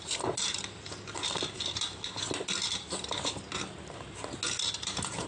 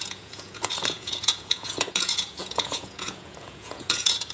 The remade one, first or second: second